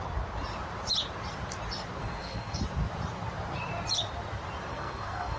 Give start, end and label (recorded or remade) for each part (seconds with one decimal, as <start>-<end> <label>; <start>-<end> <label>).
0.0-2.0 recorded; 2.0-2.6 remade; 2.6-4.7 recorded; 4.7-5.4 remade